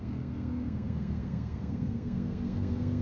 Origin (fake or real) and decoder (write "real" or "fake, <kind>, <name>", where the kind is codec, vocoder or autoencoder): fake, codec, SNAC